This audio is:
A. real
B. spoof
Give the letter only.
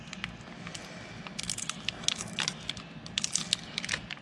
A